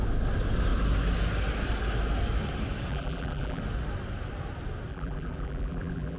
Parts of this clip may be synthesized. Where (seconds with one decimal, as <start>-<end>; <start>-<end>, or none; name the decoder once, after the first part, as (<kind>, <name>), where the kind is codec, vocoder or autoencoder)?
2.9-3.6 (vocoder, BigVGAN v2); 4.9-6.2

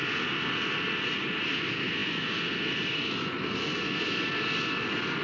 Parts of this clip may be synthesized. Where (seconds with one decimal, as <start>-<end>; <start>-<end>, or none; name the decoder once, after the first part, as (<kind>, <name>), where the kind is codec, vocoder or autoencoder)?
none

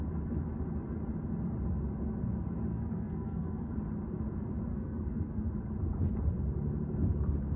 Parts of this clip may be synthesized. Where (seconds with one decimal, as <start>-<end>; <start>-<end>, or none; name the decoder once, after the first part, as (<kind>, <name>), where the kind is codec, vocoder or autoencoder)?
2.7-3.7 (codec, SNAC); 4.7-5.5

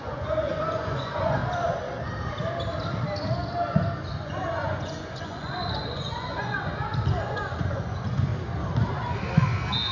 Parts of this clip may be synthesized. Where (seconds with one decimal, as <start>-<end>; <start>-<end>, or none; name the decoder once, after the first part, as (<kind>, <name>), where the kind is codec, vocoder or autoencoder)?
0.0-1.4 (vocoder, Vocos); 4.1-6.7; 7.2-8.3

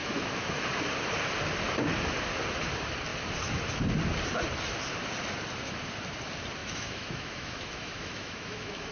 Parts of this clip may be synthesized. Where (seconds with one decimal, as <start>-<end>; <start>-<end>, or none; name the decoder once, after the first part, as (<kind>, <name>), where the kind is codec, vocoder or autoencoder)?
0.0-0.7 (autoencoder, DAC-VAE); 6.6-8.9